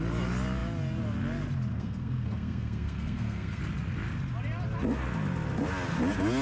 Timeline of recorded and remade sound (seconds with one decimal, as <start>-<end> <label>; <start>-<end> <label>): 0.0-1.7 recorded; 1.7-3.6 remade; 3.6-6.4 recorded